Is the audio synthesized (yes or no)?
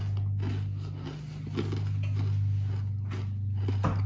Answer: no